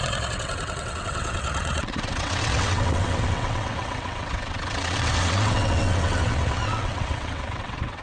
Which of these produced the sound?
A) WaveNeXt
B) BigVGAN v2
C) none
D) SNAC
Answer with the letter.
A